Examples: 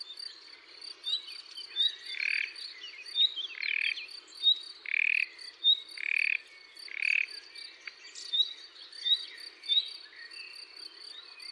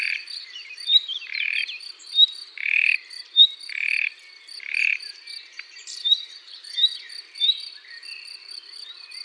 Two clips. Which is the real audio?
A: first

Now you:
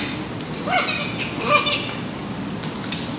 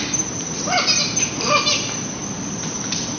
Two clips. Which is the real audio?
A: first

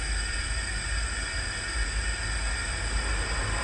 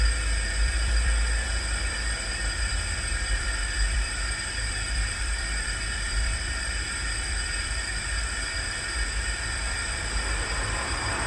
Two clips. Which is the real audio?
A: first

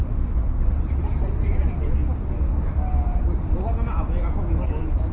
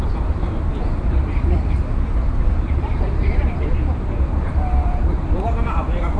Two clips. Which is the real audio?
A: first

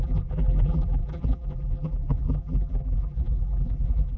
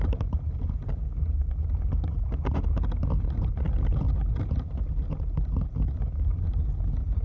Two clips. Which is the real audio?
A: second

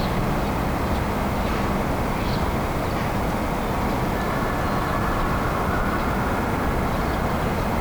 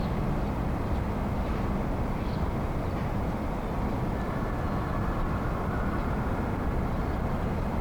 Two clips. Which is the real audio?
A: first